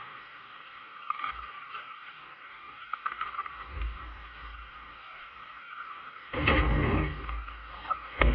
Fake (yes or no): yes